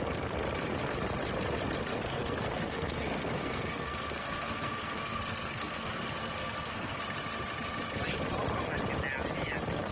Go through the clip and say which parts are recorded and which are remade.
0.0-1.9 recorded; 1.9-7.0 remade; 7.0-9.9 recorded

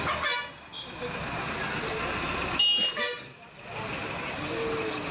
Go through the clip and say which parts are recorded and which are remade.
0.0-5.1 recorded

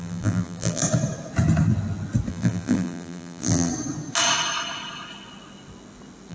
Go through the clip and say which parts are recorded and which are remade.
0.0-0.8 remade; 0.8-2.3 recorded; 2.3-3.7 remade; 3.7-6.3 recorded

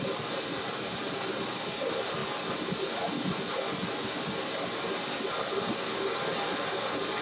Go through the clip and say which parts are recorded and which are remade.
0.0-7.2 recorded

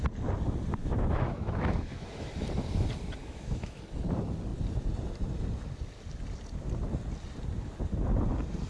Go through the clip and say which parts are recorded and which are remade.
0.0-0.8 recorded; 0.8-2.3 remade; 2.3-3.2 recorded; 3.2-3.8 remade; 3.8-8.7 recorded